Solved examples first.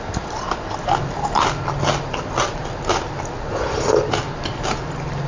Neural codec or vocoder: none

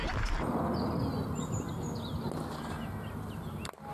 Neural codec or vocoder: none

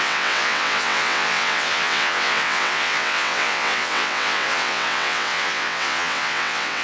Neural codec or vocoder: vocoder, WaveNeXt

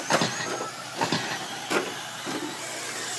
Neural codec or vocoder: none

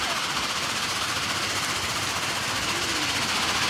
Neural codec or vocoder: none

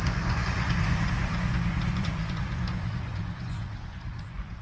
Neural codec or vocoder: vocoder, Vocos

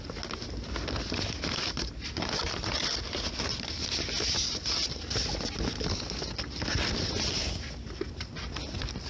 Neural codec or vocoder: none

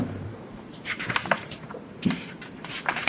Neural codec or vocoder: vocoder, BigVGAN v2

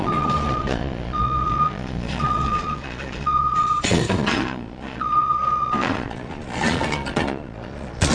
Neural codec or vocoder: vocoder, Vocos